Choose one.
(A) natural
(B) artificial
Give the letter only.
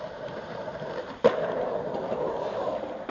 A